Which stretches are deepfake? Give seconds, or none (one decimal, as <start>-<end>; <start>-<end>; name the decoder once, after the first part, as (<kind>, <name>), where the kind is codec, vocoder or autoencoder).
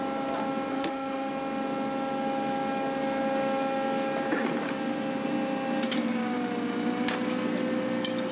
0.7-1.3 (autoencoder, DAC-VAE)